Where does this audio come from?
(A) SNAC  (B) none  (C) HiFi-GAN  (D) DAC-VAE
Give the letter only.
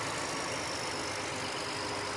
B